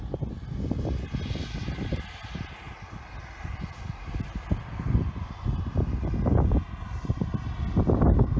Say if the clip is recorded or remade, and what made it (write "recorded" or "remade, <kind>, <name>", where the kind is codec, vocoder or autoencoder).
recorded